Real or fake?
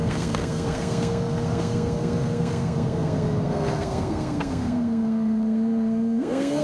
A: fake